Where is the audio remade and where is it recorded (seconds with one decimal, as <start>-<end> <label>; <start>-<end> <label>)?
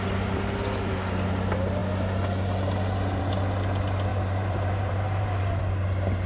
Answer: 0.0-4.1 recorded; 4.1-5.6 remade; 5.6-6.3 recorded